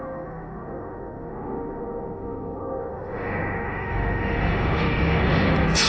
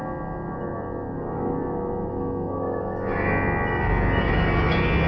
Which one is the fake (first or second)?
first